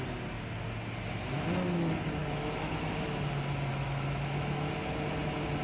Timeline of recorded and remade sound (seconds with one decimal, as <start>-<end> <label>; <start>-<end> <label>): 0.0-2.2 recorded; 2.2-2.8 remade; 2.8-3.7 recorded; 3.7-4.7 remade; 4.7-5.6 recorded